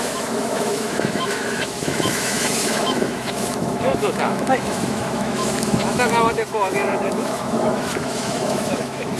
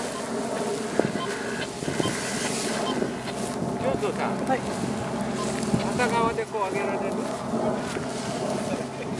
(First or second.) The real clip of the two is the second